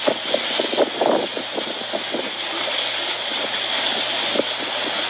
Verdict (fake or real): real